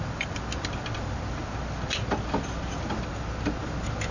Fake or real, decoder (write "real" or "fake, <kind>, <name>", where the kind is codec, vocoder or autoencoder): real